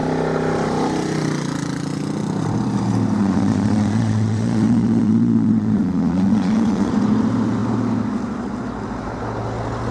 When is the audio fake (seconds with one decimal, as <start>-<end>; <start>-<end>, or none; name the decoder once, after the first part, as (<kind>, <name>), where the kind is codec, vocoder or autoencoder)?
3.2-6.9 (vocoder, Vocos)